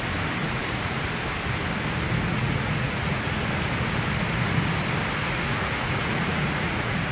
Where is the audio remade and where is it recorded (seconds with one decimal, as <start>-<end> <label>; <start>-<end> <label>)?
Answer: 0.0-0.4 recorded; 0.4-1.0 remade; 1.0-2.3 recorded; 2.3-3.4 remade; 3.4-5.2 recorded; 5.2-7.1 remade